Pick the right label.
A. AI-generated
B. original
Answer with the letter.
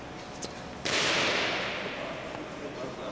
B